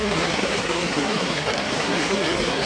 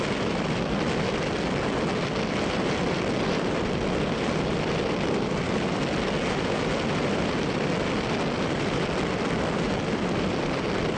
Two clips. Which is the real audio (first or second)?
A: second